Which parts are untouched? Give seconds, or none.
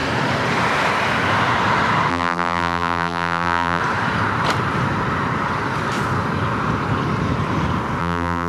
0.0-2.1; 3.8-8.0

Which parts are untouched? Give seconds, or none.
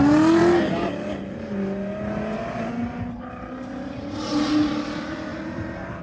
0.0-5.3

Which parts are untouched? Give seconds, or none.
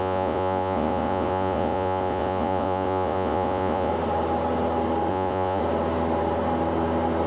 3.9-5.1; 5.6-7.3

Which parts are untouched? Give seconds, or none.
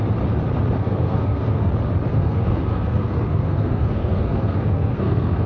0.0-0.8; 1.7-2.1